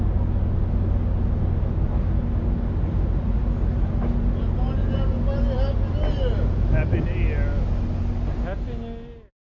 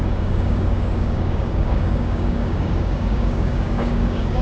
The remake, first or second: second